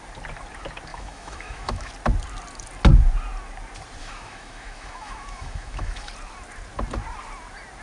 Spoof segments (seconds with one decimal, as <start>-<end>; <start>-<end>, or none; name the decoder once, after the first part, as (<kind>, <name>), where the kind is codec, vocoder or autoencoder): 0.9-1.9 (autoencoder, DAC-VAE); 4.0-6.1